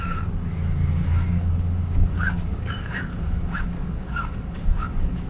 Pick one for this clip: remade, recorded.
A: remade